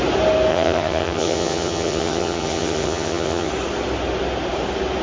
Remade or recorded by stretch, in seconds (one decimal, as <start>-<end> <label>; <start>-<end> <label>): 0.0-0.5 recorded; 0.5-3.5 remade; 3.5-5.0 recorded